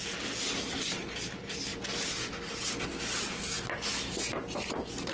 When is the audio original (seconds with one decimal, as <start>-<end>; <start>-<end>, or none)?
0.0-5.1